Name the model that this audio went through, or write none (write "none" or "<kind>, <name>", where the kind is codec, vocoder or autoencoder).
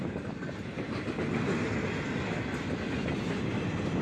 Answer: none